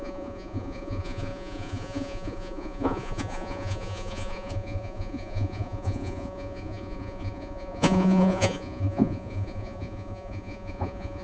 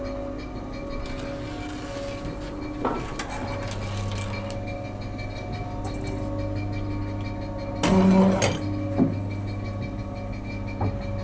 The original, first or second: second